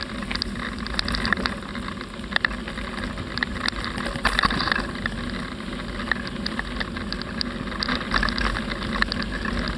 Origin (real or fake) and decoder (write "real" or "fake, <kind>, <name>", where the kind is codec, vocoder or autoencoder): real